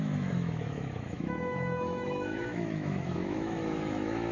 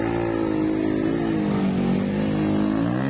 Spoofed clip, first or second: first